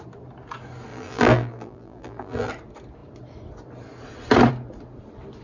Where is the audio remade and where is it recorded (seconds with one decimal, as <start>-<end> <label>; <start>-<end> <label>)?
0.0-0.9 recorded; 0.9-2.5 remade; 2.5-5.4 recorded